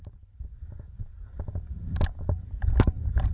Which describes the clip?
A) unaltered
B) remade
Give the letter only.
A